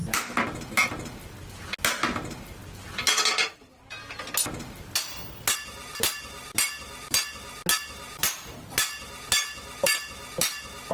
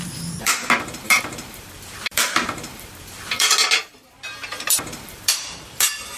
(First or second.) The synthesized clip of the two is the second